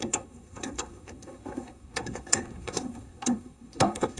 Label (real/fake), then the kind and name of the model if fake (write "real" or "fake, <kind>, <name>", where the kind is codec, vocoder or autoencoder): fake, codec, SNAC